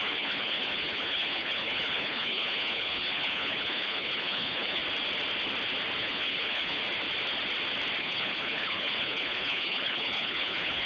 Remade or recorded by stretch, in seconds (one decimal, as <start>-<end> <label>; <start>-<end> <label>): 0.0-4.8 remade; 4.8-6.0 recorded; 6.0-6.8 remade; 6.8-8.0 recorded; 8.0-10.9 remade